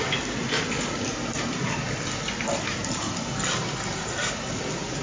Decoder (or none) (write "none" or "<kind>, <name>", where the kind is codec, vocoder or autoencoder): none